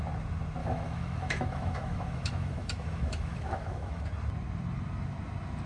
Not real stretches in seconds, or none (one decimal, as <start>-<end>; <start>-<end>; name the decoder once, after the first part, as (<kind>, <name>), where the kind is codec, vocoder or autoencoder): 0.6-4.0 (autoencoder, DAC-VAE)